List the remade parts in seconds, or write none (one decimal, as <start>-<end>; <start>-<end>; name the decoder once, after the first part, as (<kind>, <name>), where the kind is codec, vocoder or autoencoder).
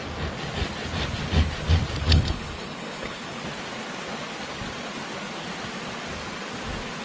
2.0-3.4 (codec, HILCodec)